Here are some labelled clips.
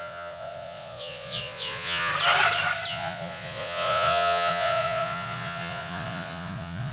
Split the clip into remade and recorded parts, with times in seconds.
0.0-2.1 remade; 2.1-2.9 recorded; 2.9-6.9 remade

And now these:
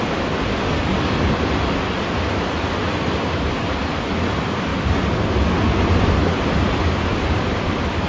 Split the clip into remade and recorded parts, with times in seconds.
0.0-7.1 recorded; 7.1-8.1 remade

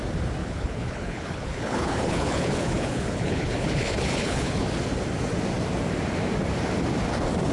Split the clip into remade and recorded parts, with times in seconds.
0.0-0.4 recorded; 0.4-4.6 remade; 4.6-7.5 recorded

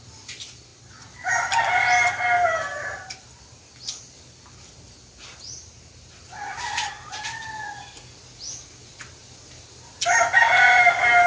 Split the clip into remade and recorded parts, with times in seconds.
0.0-11.3 recorded

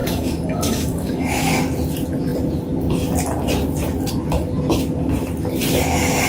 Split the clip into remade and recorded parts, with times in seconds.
0.0-1.6 remade; 1.6-6.3 recorded

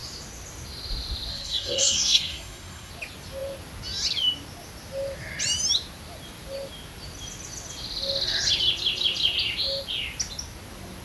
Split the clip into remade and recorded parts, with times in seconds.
0.0-1.3 recorded; 1.3-2.9 remade; 2.9-11.0 recorded

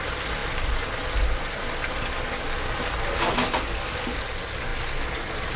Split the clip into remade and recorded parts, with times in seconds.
0.0-5.6 recorded